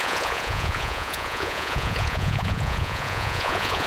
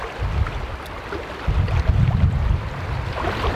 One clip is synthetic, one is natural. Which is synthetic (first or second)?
first